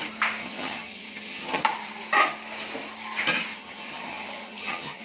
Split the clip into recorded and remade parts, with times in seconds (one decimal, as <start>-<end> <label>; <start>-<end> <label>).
0.0-0.4 recorded; 0.4-1.6 remade; 1.6-3.5 recorded; 3.5-5.0 remade